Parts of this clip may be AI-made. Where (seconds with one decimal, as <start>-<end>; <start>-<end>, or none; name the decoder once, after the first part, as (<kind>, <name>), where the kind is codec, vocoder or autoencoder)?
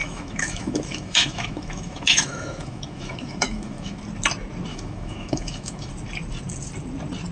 0.0-4.0 (autoencoder, DAC-VAE); 4.7-5.9